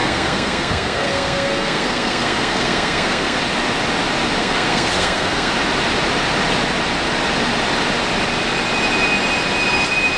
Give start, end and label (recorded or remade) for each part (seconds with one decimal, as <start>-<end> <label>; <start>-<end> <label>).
0.0-3.4 remade; 3.4-4.4 recorded; 4.4-5.5 remade; 5.5-10.2 recorded